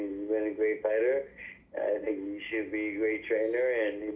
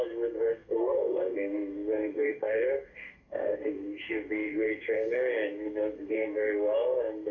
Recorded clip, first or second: first